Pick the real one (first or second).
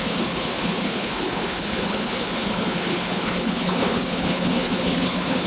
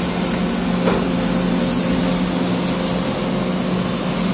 second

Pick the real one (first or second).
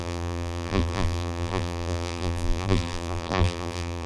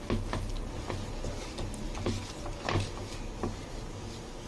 second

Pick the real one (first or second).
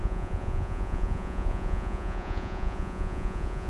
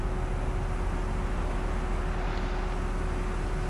second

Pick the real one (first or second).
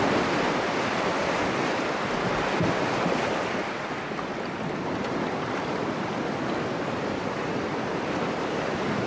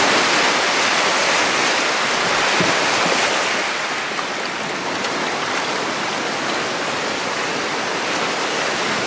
second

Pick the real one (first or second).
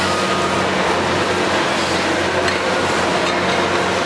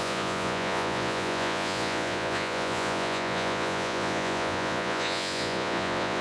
first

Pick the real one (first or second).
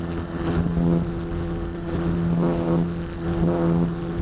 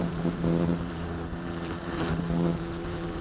first